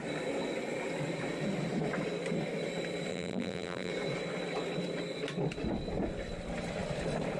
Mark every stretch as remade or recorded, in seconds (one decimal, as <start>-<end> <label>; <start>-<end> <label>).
0.0-3.1 recorded; 3.1-3.9 remade; 3.9-7.4 recorded

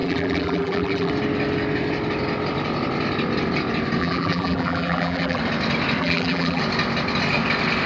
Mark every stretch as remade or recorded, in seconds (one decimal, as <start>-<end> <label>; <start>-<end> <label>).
0.0-1.1 remade; 1.1-4.0 recorded; 4.0-5.4 remade; 5.4-6.0 recorded; 6.0-6.6 remade; 6.6-7.9 recorded

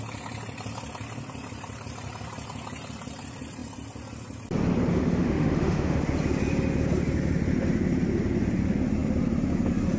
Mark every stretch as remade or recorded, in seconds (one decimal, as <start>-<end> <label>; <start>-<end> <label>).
0.0-4.9 recorded; 4.9-6.0 remade; 6.0-10.0 recorded

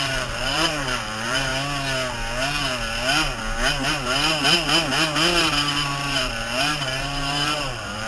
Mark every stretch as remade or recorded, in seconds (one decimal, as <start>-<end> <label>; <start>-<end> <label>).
0.0-1.5 remade; 1.5-5.4 recorded; 5.4-8.1 remade

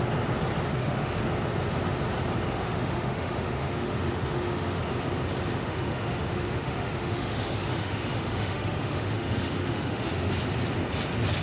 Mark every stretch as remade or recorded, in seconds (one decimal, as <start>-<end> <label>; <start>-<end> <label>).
0.0-0.7 recorded; 0.7-1.2 remade; 1.2-2.5 recorded; 2.5-4.8 remade; 4.8-5.5 recorded; 5.5-10.3 remade; 10.3-11.4 recorded

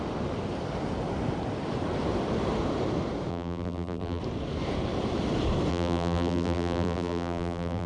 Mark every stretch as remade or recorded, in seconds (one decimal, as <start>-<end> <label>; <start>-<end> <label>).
0.0-3.3 recorded; 3.3-4.2 remade; 4.2-5.7 recorded; 5.7-7.9 remade

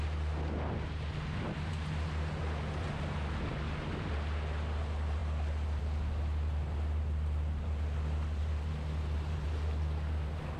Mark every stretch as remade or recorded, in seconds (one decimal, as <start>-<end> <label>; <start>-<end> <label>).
0.0-10.6 recorded

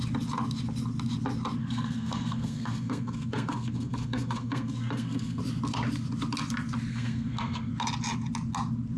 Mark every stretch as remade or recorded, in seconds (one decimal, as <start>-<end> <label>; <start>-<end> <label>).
0.0-1.6 recorded; 1.6-5.4 remade; 5.4-6.9 recorded; 6.9-7.7 remade; 7.7-9.0 recorded